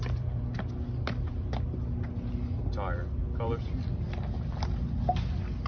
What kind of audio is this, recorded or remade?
recorded